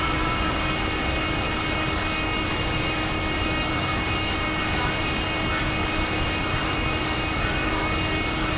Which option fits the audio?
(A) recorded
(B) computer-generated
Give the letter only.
B